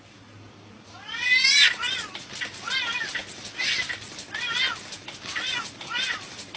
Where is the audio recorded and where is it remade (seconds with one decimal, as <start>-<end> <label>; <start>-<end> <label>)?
0.0-3.2 remade; 3.2-5.2 recorded; 5.2-6.6 remade